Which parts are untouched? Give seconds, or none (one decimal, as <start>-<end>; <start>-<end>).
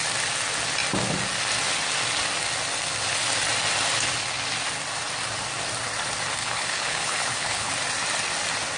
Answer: 0.0-6.4; 7.7-8.8